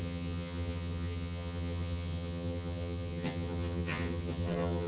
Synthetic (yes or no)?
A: yes